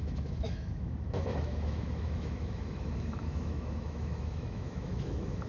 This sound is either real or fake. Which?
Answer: fake